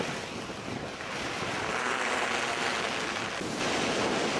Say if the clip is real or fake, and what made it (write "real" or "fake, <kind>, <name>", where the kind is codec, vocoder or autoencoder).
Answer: real